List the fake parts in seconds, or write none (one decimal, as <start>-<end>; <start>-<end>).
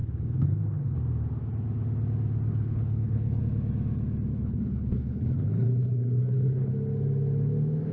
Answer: 0.0-1.0; 2.5-3.4; 4.3-6.7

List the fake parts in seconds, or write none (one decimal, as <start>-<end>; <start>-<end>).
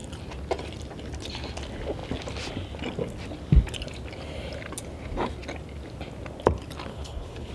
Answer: 6.9-7.5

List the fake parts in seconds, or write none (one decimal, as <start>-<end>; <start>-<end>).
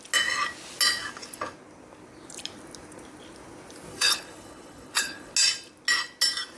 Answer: 3.9-5.3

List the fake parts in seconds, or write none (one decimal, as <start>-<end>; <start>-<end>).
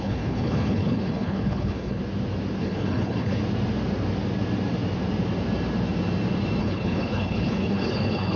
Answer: 0.0-2.0; 2.6-3.4; 6.6-8.4